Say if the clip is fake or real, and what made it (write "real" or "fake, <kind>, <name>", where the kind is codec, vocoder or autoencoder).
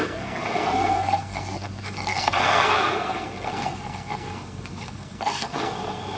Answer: fake, codec, SNAC